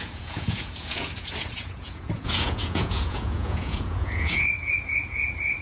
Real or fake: fake